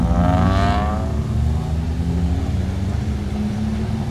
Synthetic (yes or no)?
no